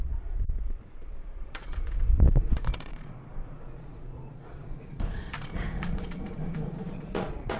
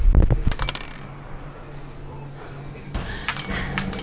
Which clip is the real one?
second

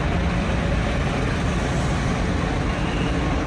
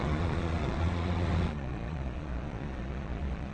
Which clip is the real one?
first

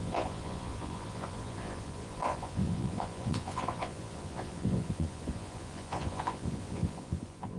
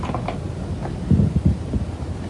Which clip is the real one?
second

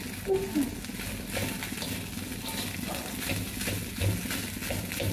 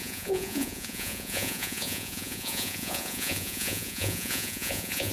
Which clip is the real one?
first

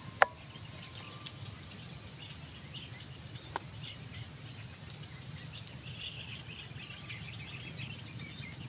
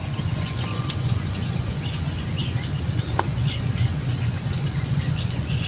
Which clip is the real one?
first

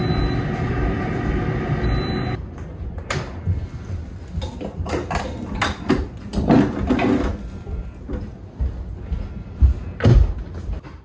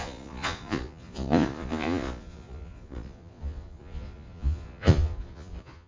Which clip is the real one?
first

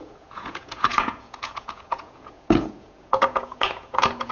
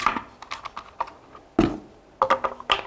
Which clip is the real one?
second